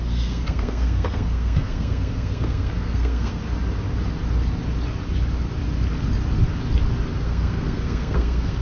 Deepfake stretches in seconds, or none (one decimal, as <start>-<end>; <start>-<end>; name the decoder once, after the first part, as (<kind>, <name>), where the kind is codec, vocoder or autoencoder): 0.0-3.4 (codec, SNAC); 7.2-8.6

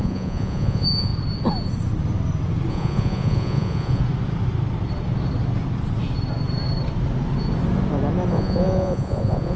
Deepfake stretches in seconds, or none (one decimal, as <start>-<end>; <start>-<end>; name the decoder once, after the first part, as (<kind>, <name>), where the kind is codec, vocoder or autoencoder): 0.0-1.1 (vocoder, Vocos); 2.7-4.0; 8.3-9.6

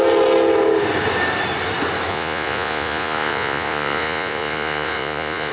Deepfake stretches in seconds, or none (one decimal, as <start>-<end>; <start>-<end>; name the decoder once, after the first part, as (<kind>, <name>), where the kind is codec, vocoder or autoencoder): 2.1-5.5 (vocoder, Vocos)

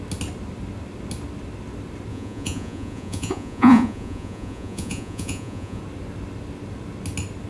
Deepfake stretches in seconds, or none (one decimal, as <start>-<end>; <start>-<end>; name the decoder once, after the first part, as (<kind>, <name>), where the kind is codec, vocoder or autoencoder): 2.1-5.8 (vocoder, Vocos)

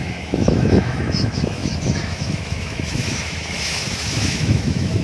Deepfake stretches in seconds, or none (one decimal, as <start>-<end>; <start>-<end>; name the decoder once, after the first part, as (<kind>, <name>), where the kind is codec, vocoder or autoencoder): 0.0-5.0 (autoencoder, DAC-VAE)

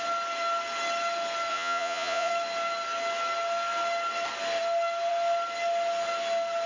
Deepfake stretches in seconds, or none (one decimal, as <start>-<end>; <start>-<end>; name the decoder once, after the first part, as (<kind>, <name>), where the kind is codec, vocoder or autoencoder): 1.5-2.3 (vocoder, Vocos)

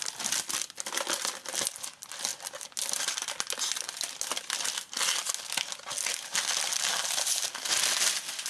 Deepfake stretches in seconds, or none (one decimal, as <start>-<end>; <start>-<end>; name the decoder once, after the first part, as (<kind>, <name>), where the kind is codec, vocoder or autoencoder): none